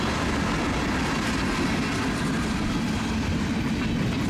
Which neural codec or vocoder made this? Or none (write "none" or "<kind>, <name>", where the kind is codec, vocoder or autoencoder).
none